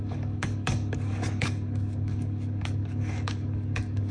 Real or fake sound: fake